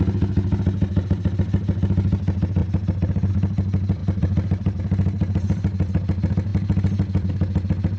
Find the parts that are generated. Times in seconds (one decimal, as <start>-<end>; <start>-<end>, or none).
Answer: 2.6-3.3; 4.0-4.8